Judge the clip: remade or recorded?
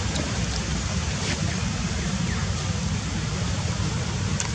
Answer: recorded